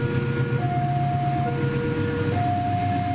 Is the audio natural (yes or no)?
yes